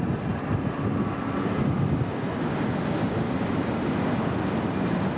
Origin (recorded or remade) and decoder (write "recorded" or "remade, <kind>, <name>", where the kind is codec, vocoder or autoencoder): recorded